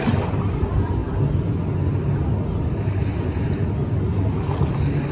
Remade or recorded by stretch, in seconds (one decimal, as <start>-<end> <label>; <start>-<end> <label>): 0.0-5.1 recorded